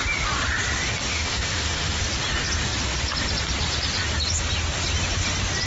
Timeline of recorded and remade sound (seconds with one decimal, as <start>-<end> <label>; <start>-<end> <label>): 0.0-1.1 recorded; 1.1-2.0 remade; 2.0-5.7 recorded